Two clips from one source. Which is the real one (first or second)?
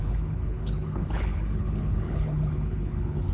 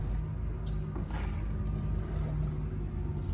second